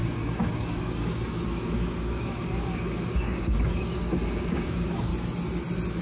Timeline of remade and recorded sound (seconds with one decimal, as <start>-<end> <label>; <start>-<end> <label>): 0.0-5.1 remade; 5.1-6.0 recorded